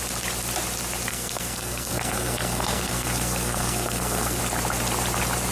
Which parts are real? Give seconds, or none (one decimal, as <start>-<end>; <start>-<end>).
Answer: 0.0-1.1; 4.4-5.5